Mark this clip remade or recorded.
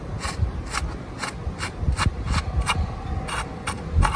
recorded